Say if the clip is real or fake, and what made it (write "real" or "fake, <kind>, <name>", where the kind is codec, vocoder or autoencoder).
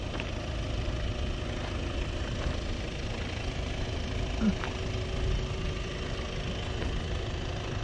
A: real